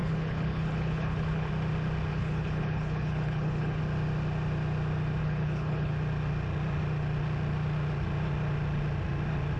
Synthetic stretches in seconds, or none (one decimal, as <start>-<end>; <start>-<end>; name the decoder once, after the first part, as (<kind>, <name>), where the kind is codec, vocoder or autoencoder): 0.0-1.5 (codec, HILCodec); 2.1-3.8; 5.2-5.9